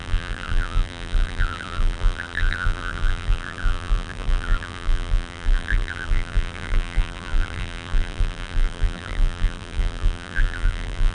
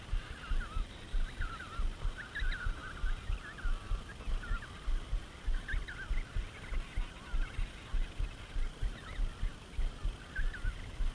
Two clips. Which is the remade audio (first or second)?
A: first